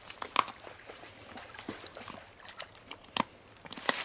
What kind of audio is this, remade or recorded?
recorded